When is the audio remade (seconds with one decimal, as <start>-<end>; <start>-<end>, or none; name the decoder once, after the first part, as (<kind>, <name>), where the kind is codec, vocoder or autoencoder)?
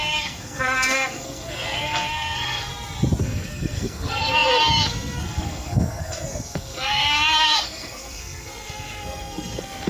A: 0.0-2.7 (codec, SNAC); 3.2-9.9